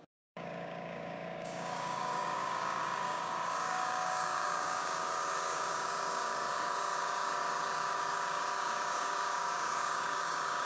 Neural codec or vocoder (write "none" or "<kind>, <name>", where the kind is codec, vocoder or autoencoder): codec, DAC